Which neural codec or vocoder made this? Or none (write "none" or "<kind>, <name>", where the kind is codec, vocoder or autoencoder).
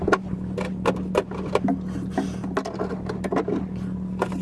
none